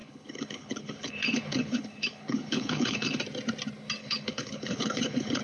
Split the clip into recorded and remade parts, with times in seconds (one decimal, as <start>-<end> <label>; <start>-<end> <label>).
0.0-3.2 remade; 3.2-4.0 recorded; 4.0-5.4 remade